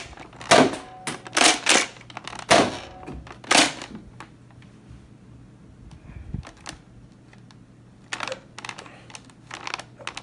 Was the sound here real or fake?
real